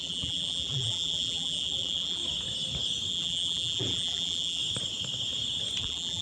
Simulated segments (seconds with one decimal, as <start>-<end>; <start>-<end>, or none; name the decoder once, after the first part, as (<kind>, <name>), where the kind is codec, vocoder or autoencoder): 0.0-2.2 (vocoder, BigVGAN v2); 3.1-4.6; 5.8-6.2